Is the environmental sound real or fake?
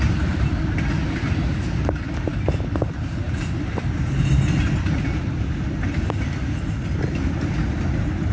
real